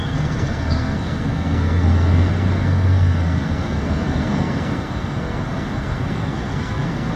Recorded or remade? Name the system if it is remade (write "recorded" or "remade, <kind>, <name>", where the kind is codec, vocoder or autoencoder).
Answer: remade, codec, SNAC